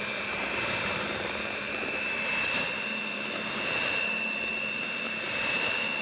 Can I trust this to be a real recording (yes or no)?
no